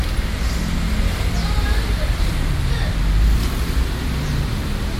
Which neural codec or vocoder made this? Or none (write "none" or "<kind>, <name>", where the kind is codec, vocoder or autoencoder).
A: none